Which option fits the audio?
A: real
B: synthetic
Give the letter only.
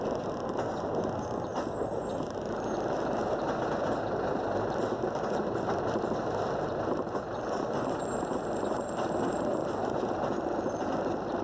A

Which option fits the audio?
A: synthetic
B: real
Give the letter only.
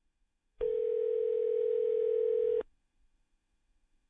A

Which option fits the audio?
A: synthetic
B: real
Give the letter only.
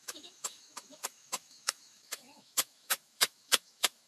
A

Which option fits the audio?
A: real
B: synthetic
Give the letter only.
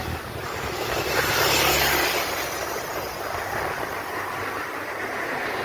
A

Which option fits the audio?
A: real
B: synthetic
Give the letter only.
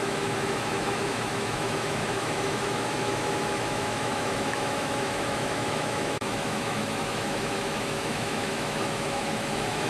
B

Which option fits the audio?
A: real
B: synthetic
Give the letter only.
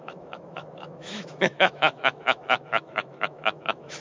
B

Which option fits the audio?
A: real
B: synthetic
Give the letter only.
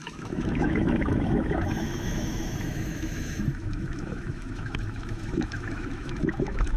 B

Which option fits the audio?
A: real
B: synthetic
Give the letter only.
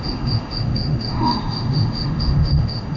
B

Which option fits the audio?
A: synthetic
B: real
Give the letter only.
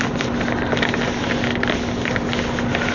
B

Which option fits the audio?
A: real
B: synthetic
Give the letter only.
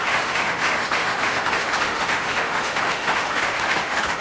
B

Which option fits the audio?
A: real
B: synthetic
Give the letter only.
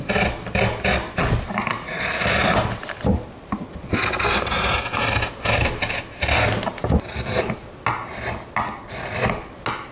A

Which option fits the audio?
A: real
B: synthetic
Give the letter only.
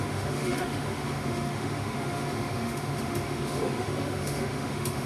B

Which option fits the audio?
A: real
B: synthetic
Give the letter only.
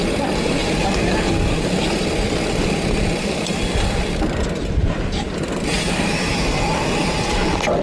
A